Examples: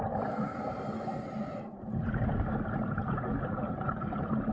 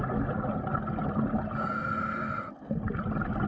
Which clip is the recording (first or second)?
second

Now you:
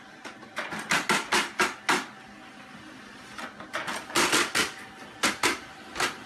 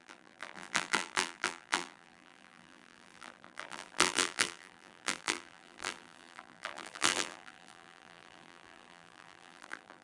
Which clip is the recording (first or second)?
first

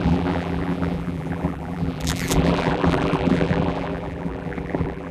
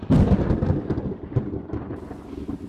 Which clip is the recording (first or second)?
second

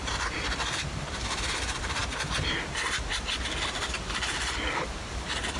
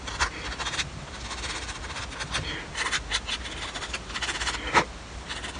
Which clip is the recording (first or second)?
second